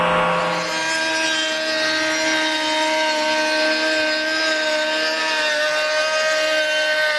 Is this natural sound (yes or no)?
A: yes